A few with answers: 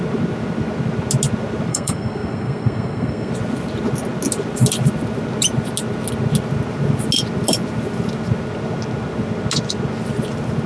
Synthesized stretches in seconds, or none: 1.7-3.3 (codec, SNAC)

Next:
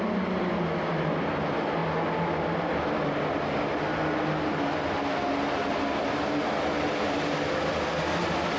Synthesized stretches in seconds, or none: none

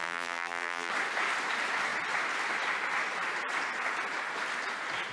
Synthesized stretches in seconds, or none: 0.0-0.9 (vocoder, BigVGAN v2)